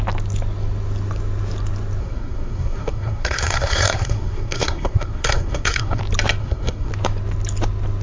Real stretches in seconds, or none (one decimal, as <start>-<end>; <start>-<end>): 0.0-2.0; 6.0-6.4; 6.9-8.0